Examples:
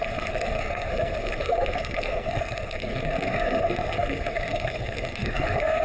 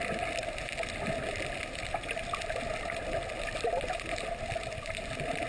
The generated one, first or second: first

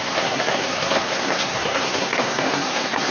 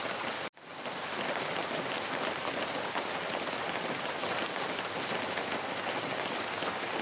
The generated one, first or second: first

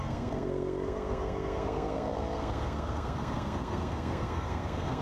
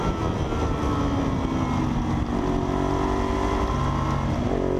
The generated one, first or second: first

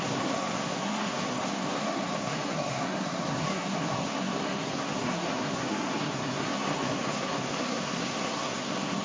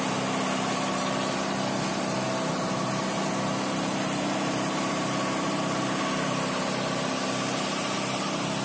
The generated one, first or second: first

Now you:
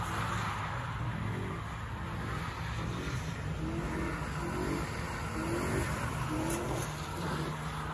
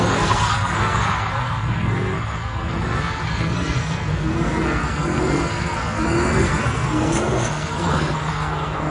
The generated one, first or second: second